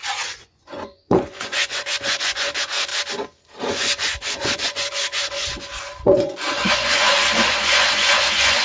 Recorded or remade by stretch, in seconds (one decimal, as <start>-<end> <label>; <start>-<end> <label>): 0.0-2.9 remade; 2.9-3.7 recorded; 3.7-8.6 remade